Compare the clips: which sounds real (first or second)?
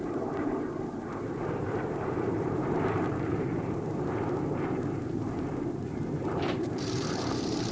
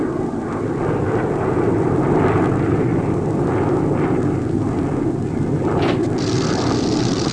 second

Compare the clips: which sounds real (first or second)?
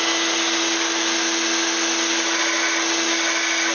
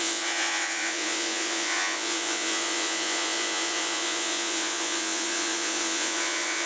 first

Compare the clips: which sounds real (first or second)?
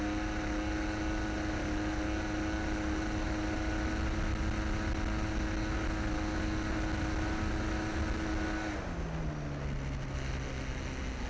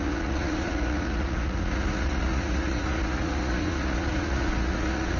first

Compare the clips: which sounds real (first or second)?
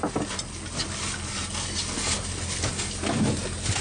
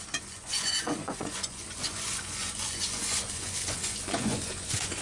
first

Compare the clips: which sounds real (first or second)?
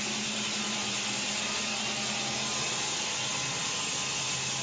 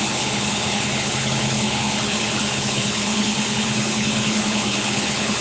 first